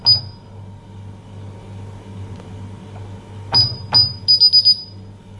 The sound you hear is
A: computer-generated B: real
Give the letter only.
B